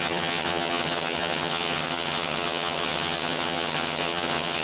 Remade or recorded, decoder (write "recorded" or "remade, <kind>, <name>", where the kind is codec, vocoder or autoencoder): remade, vocoder, HiFi-GAN